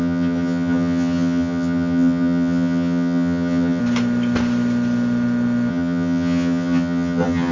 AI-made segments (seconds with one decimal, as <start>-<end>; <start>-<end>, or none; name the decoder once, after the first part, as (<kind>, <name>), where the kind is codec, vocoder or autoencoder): 0.0-3.8 (vocoder, HiFi-GAN); 5.7-7.5